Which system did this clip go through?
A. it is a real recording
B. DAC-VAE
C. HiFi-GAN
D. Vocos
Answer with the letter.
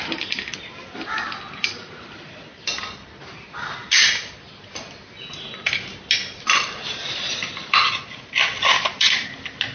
A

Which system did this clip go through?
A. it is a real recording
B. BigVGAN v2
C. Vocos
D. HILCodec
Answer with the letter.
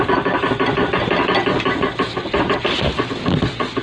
A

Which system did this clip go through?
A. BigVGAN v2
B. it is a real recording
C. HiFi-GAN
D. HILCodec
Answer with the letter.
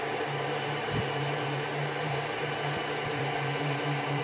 A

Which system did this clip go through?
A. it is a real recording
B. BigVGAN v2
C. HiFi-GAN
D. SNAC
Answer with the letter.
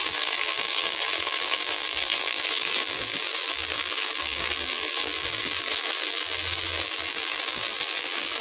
B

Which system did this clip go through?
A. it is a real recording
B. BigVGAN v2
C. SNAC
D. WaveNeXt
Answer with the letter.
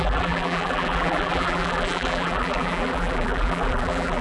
B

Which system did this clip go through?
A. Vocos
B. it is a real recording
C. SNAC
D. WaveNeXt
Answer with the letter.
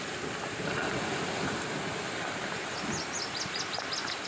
B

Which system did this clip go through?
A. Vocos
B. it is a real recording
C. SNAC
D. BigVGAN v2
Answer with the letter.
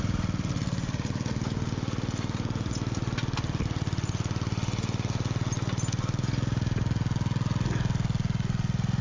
B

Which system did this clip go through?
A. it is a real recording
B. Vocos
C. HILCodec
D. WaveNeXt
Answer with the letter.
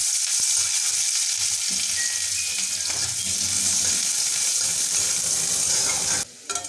A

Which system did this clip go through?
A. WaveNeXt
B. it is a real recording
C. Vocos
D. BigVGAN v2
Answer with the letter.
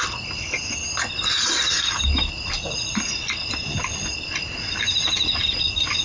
B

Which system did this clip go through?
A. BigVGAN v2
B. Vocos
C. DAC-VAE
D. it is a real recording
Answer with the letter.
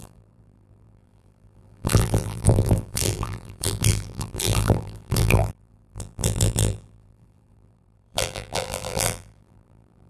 A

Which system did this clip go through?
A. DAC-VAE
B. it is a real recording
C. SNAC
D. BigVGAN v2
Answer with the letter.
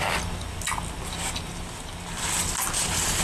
B